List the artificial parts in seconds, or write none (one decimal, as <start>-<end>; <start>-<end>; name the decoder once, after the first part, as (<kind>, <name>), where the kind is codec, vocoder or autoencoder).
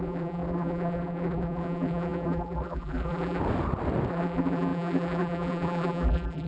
0.0-3.4 (vocoder, BigVGAN v2); 4.1-6.5